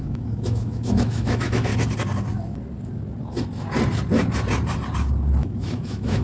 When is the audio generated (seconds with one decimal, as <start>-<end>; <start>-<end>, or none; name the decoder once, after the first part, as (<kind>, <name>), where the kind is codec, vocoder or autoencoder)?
0.0-1.7 (autoencoder, DAC-VAE); 5.4-6.2